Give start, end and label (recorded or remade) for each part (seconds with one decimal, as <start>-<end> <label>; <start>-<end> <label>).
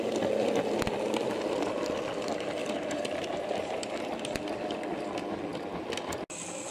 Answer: 0.0-2.6 recorded; 2.6-3.9 remade; 3.9-6.7 recorded